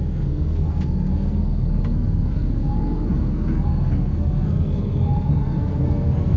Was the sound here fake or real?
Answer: fake